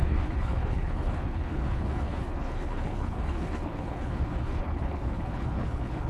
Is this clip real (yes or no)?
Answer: no